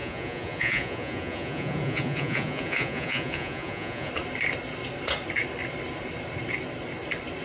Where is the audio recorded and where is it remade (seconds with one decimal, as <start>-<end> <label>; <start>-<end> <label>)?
0.0-4.1 remade; 4.1-7.4 recorded